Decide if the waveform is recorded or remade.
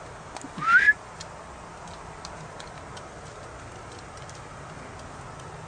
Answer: recorded